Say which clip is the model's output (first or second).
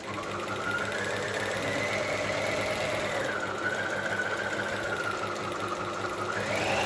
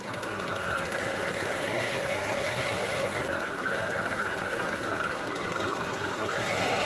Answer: second